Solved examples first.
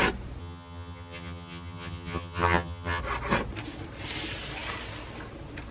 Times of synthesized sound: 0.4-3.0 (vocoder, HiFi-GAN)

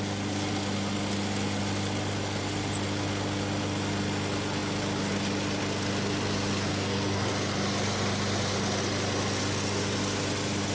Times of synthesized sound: 6.7-7.3 (codec, SNAC)

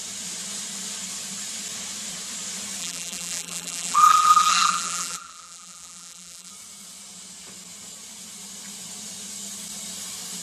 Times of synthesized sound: 2.8-6.5 (vocoder, BigVGAN v2)